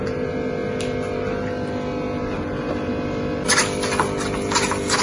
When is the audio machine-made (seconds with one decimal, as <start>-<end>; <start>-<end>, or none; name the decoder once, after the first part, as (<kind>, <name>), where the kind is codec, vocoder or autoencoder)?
none